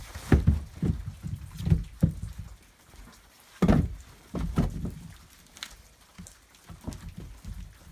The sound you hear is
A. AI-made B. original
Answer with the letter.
B